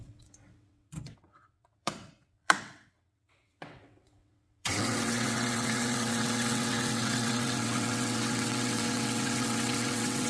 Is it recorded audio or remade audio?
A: remade